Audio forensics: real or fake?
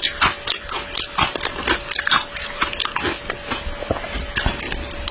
real